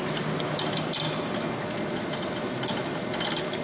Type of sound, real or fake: real